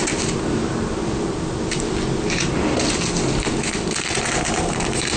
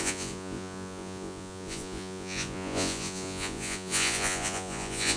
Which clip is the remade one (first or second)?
second